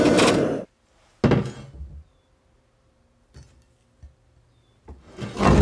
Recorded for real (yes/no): yes